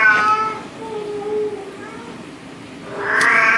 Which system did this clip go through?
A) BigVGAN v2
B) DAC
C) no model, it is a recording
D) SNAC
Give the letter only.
C